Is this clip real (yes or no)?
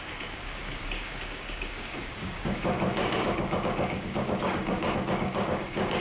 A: no